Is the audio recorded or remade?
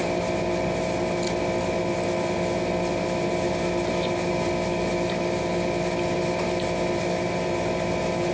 recorded